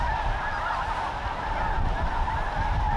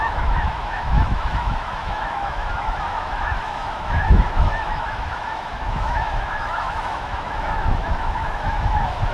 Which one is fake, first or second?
second